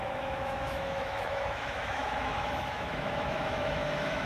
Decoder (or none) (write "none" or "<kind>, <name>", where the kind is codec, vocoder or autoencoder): autoencoder, DAC-VAE